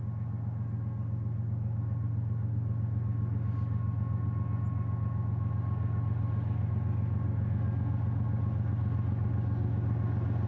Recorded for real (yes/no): yes